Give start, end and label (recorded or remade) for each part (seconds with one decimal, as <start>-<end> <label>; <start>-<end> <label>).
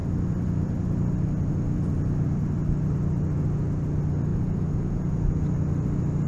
0.0-4.3 recorded; 4.3-5.4 remade; 5.4-6.3 recorded